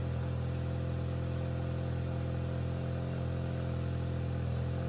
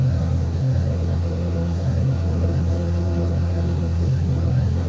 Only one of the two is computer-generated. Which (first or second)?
second